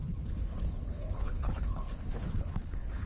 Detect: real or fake fake